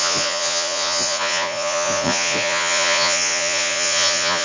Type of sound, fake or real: fake